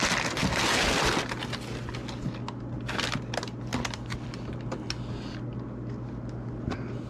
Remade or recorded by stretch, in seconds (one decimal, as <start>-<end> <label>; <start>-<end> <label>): 0.0-0.4 recorded; 0.4-1.2 remade; 1.2-3.7 recorded; 3.7-4.3 remade; 4.3-7.1 recorded